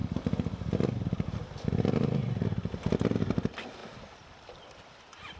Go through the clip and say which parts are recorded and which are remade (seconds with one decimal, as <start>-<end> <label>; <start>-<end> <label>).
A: 0.0-5.4 recorded